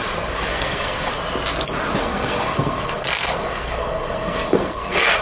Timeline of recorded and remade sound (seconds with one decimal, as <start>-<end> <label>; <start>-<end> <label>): 0.0-0.5 recorded; 0.5-1.1 remade; 1.1-2.0 recorded; 2.0-5.2 remade